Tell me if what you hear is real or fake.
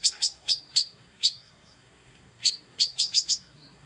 fake